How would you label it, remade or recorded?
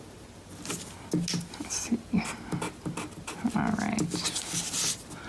recorded